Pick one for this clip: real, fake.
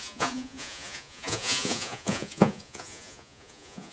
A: fake